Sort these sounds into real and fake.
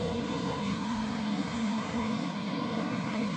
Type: fake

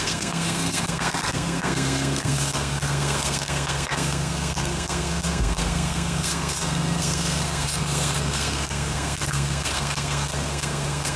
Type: fake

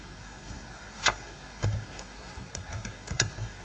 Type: fake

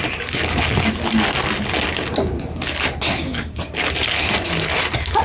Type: real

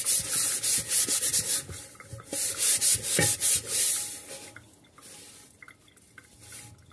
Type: real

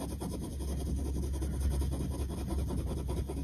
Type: real